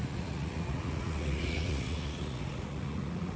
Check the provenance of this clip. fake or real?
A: fake